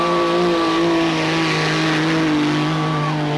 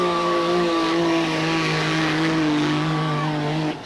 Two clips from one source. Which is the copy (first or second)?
second